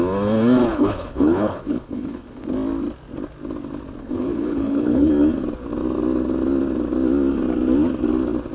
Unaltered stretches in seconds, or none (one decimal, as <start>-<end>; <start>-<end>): 0.0-0.7; 2.4-4.0; 5.1-8.5